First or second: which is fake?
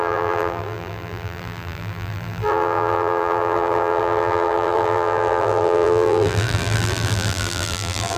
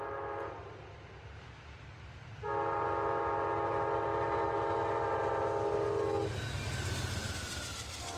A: first